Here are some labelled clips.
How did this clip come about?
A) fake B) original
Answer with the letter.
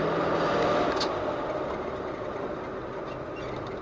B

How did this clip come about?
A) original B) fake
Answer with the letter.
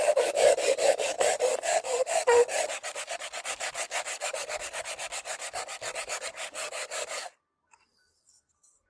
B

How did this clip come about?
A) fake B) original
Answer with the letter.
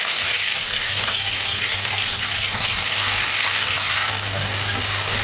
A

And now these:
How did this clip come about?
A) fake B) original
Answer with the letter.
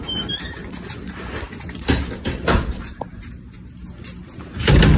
B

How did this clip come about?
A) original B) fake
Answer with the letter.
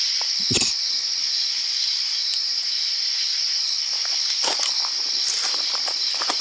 A